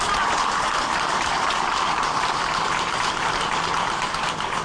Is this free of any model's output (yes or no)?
no